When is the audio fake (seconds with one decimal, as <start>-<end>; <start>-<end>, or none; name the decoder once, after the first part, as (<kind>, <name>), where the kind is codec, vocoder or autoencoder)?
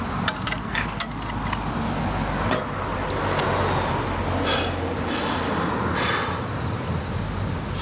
0.6-1.1 (codec, SNAC)